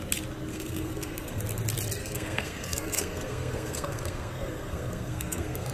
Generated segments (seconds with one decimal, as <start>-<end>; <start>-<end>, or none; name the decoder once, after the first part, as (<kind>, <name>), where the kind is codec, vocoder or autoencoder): 0.5-1.4 (codec, SNAC); 2.0-5.7